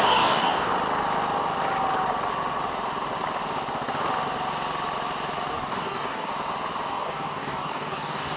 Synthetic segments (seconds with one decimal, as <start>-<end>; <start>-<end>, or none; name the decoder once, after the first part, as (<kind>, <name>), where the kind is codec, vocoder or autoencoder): 0.0-0.7 (codec, DAC); 5.5-6.3; 6.9-8.4